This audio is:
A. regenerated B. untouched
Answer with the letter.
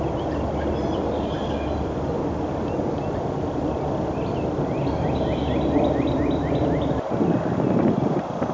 B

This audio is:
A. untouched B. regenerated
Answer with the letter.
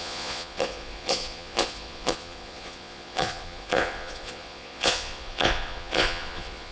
B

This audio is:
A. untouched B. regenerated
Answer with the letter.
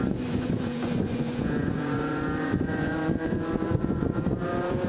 B